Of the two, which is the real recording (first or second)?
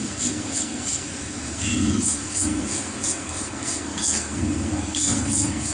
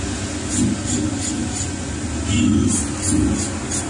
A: second